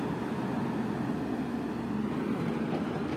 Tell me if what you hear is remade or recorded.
recorded